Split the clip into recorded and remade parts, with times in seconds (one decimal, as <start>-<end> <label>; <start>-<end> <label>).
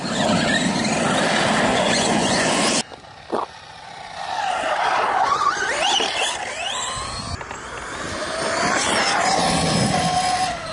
0.0-1.7 recorded; 1.7-2.7 remade; 2.7-5.2 recorded; 5.2-5.7 remade; 5.7-10.7 recorded